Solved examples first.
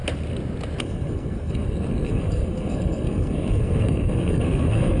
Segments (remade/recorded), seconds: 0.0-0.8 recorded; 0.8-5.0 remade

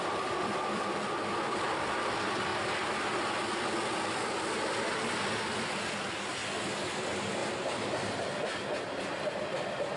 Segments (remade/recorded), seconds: 0.0-2.5 remade; 2.5-5.7 recorded; 5.7-6.4 remade; 6.4-6.9 recorded; 6.9-7.4 remade; 7.4-8.2 recorded; 8.2-10.0 remade

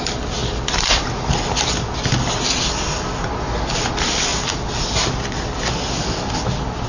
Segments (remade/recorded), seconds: 0.0-6.9 recorded

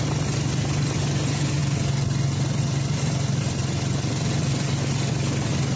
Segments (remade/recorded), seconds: 0.0-5.8 recorded

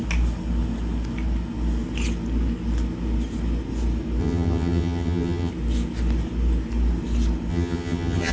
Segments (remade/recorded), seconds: 0.0-4.2 recorded; 4.2-5.5 remade; 5.5-7.5 recorded; 7.5-8.3 remade

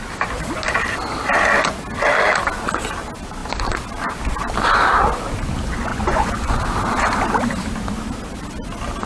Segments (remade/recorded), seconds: 0.0-5.9 recorded; 5.9-6.6 remade; 6.6-9.1 recorded

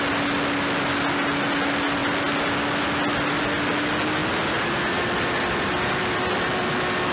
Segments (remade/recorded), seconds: 0.0-7.1 recorded